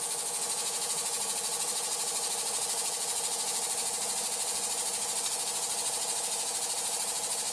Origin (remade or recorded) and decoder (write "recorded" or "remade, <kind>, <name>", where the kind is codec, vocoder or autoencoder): remade, vocoder, Vocos